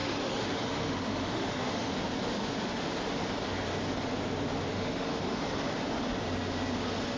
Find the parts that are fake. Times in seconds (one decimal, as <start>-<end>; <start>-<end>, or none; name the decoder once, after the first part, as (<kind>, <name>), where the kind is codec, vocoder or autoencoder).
0.0-1.9 (autoencoder, DAC-VAE); 4.7-5.4